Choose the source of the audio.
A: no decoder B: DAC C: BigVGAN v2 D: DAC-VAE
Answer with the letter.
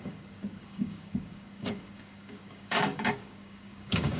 B